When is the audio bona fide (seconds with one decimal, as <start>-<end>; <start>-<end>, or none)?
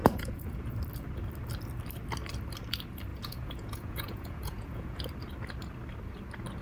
0.7-3.1; 5.0-6.6